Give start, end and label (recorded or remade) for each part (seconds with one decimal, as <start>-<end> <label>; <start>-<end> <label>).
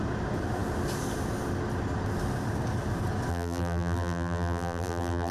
0.0-3.3 recorded; 3.3-5.3 remade